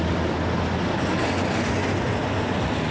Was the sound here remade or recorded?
recorded